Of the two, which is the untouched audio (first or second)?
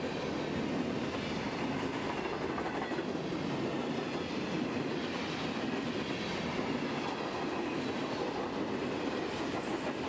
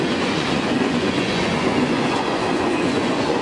first